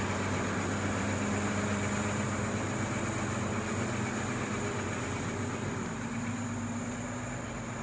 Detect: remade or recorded recorded